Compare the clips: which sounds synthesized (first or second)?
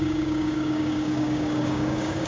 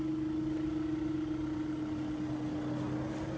first